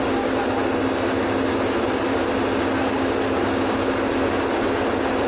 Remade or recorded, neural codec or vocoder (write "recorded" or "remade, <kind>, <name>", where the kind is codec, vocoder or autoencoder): recorded